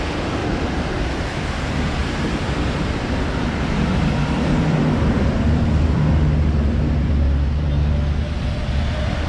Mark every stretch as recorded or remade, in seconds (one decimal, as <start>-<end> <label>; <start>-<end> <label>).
0.0-0.4 recorded; 0.4-1.1 remade; 1.1-2.0 recorded; 2.0-6.1 remade; 6.1-9.3 recorded

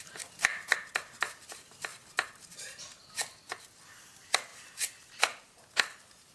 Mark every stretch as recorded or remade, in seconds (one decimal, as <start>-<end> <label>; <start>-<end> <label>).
0.0-0.5 recorded; 0.5-1.0 remade; 1.0-4.5 recorded; 4.5-5.1 remade; 5.1-6.3 recorded

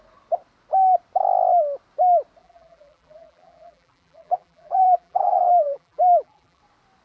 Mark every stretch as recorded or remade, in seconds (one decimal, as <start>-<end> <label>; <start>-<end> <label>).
0.0-2.4 recorded; 2.4-6.6 remade; 6.6-7.0 recorded

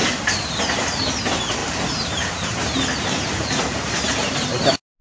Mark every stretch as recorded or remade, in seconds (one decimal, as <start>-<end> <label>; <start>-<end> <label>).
0.0-1.6 recorded; 1.6-4.3 remade; 4.3-5.0 recorded

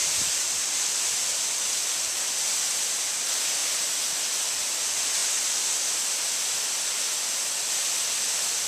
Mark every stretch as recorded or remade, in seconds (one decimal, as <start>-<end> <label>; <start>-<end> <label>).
0.0-1.1 remade; 1.1-3.6 recorded; 3.6-4.2 remade; 4.2-8.7 recorded

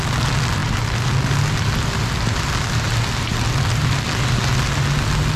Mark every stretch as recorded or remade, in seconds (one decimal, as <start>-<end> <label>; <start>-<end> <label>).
0.0-5.4 recorded